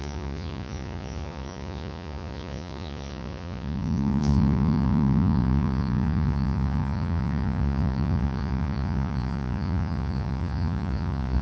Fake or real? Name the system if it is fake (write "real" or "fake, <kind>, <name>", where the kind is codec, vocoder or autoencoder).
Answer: fake, vocoder, Vocos